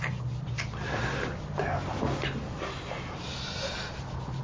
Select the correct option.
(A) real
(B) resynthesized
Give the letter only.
A